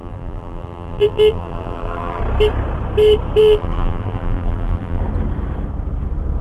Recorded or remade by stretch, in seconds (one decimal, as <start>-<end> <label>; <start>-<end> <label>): 0.0-2.2 remade; 2.2-3.4 recorded; 3.4-5.0 remade; 5.0-6.4 recorded